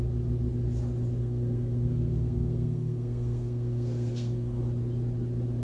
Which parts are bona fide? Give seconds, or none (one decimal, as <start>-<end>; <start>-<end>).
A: 0.0-1.2; 4.6-5.6